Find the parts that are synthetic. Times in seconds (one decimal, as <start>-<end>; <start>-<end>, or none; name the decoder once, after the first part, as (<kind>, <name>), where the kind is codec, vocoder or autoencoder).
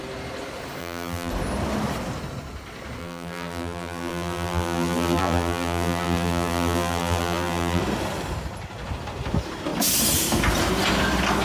0.8-1.3 (vocoder, BigVGAN v2); 3.0-7.8